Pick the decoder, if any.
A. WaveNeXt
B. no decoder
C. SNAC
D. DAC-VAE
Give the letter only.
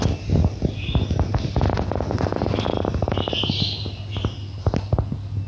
B